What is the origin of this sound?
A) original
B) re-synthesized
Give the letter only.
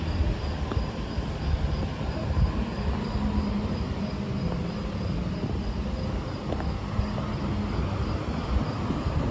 A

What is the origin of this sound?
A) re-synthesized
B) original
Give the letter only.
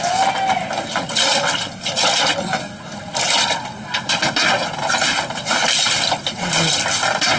B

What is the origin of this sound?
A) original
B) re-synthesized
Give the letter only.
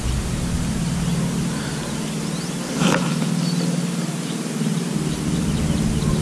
A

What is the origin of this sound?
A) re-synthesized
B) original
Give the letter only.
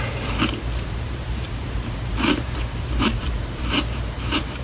A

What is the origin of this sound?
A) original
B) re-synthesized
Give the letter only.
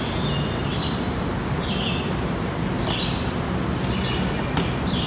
A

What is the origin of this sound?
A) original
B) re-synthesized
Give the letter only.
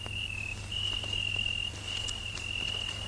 A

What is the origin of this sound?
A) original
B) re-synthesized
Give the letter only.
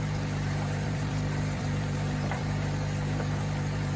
B